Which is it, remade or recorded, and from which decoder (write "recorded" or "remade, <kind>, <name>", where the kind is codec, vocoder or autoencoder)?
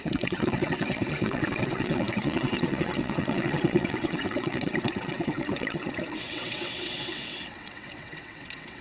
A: remade, vocoder, WaveNeXt